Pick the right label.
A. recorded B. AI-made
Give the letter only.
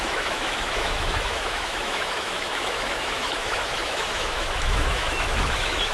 B